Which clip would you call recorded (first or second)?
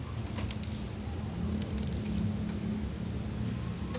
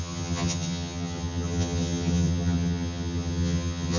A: first